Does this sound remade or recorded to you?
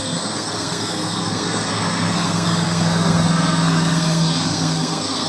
remade